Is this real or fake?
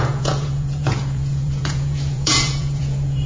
fake